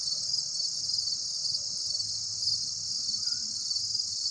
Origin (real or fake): real